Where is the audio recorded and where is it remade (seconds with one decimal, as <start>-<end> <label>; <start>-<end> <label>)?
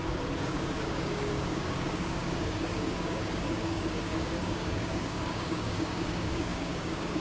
0.0-7.2 remade